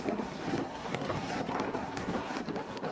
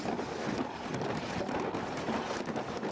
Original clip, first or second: second